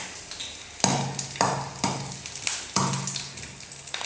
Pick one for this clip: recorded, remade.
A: recorded